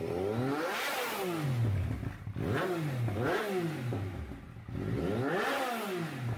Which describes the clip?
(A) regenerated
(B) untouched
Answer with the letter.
B